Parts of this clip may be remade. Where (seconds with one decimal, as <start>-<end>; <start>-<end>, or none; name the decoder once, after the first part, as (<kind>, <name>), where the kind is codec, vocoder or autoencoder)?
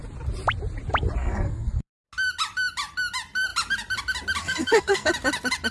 1.2-1.9 (codec, SNAC); 4.4-5.1